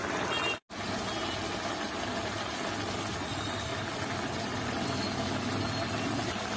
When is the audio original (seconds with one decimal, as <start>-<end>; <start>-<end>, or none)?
0.0-6.6